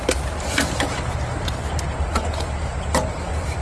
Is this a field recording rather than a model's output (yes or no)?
yes